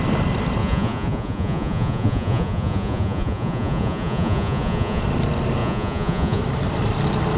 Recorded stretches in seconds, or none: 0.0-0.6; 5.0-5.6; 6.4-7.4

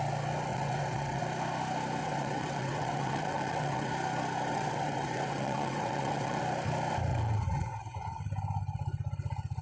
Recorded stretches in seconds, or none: 0.0-0.5; 1.2-2.0; 3.9-4.5; 6.4-7.1; 8.2-9.6

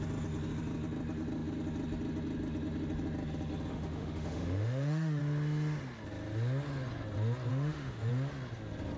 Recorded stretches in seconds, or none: 0.0-3.7; 5.2-7.5; 8.1-9.0

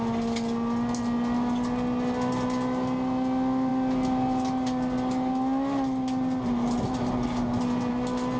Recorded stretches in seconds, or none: 0.0-8.4